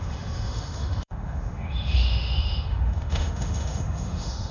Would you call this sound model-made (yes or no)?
yes